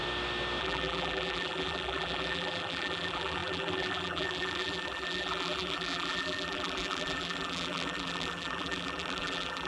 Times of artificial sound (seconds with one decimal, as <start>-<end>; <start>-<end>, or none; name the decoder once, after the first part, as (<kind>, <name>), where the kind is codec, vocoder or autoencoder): 0.6-9.7 (vocoder, BigVGAN v2)